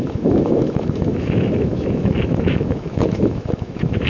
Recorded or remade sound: remade